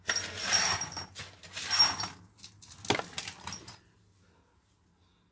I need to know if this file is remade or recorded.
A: recorded